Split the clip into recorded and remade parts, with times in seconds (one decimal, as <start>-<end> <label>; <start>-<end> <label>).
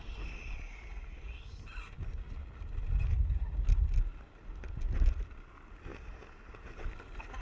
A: 0.0-7.4 recorded